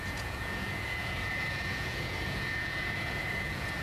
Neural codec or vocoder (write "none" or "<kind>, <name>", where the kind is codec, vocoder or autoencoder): vocoder, Vocos